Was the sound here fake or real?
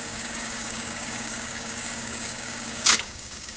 fake